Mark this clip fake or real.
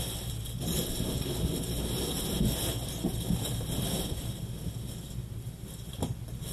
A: real